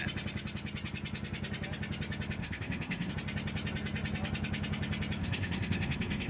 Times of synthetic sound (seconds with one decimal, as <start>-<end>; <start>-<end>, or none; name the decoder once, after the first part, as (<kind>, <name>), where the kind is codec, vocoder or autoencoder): 2.4-3.1 (codec, SNAC); 5.2-6.3

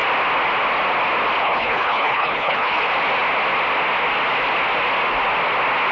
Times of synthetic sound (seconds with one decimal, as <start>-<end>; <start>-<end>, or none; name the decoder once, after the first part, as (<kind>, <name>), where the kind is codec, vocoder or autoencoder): 1.4-2.8 (codec, HILCodec)

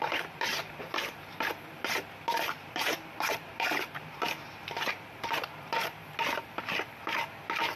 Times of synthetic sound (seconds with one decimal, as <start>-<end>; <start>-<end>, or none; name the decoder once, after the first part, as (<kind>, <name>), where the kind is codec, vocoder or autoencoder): 0.0-6.0 (vocoder, BigVGAN v2)

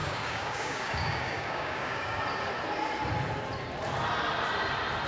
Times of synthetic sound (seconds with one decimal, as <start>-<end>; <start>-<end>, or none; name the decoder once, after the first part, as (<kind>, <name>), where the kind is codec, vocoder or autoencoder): 0.0-2.2 (codec, DAC)

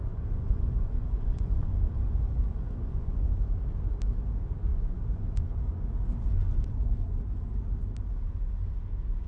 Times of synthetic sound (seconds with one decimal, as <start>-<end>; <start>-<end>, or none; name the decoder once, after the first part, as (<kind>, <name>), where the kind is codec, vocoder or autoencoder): 0.0-3.3 (vocoder, Vocos); 4.7-5.9